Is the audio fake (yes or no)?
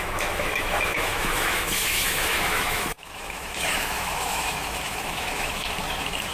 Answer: yes